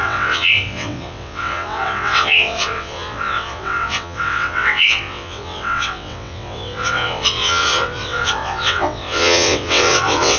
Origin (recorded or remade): remade